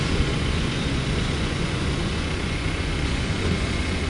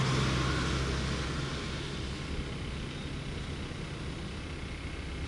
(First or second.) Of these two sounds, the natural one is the second